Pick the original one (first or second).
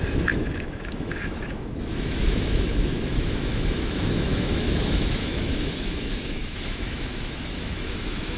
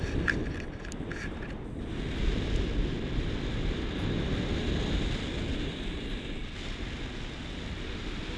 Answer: second